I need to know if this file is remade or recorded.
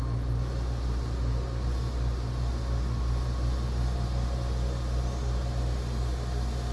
recorded